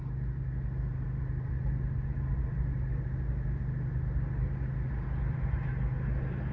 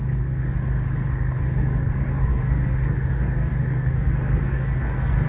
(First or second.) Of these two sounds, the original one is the first